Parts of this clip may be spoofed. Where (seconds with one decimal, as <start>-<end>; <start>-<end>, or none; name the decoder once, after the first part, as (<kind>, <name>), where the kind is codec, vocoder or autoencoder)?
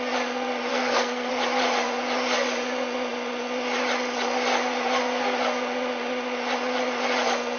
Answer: 0.7-1.3 (codec, SNAC)